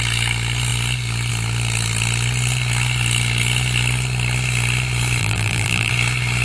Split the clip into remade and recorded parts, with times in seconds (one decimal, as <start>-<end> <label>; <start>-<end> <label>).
0.0-5.2 recorded; 5.2-5.9 remade; 5.9-6.4 recorded